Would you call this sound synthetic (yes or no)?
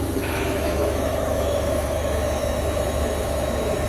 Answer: yes